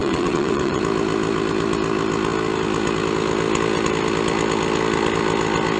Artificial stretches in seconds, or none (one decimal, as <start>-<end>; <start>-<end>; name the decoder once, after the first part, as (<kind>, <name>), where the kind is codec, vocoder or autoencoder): 0.0-0.8 (vocoder, WaveNeXt)